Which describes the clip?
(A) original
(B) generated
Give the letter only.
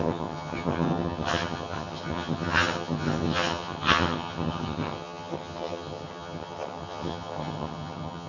B